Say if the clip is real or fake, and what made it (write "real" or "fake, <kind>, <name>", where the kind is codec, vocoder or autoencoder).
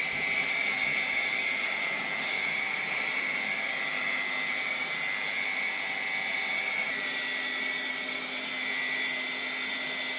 real